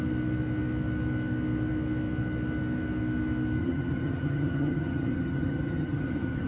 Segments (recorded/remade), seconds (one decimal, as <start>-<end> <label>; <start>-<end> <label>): 0.0-3.6 recorded; 3.6-6.5 remade